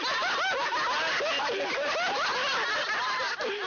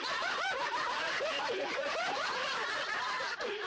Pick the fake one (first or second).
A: second